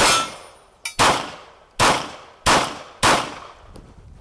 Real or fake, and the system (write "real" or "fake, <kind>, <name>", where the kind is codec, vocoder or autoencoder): real